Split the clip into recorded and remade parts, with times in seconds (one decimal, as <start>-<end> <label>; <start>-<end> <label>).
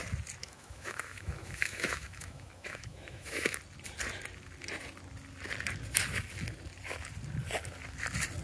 0.0-0.4 recorded; 0.4-3.6 remade; 3.6-8.4 recorded